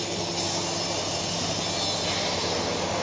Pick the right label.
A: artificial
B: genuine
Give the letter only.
B